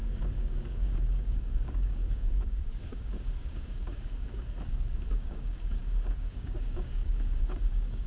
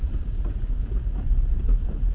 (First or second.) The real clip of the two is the second